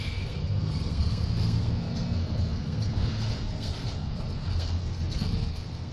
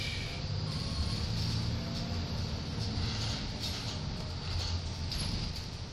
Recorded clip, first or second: second